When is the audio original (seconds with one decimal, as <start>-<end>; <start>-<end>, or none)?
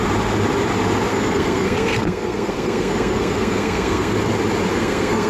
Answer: 0.0-1.1; 4.1-4.7